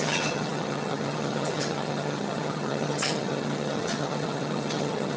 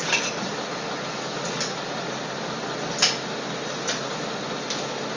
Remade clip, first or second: first